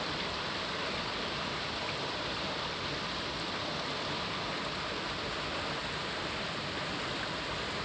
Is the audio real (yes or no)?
yes